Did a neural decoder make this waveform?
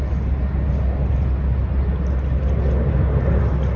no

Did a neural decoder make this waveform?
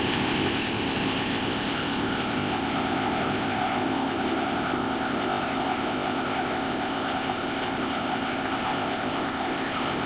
yes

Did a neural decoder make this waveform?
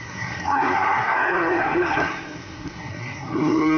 yes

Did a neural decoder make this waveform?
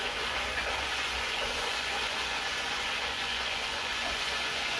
yes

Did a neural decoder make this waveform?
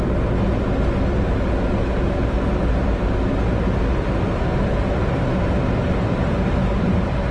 no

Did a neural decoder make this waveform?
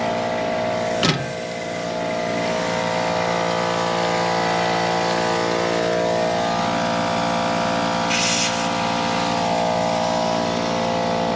no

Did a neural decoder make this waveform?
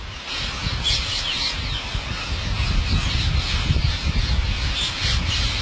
no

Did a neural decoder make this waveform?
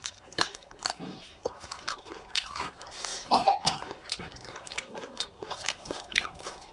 yes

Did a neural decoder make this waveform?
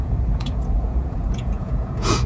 yes